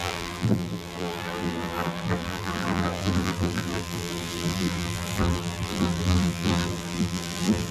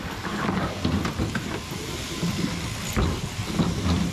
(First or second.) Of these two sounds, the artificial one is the first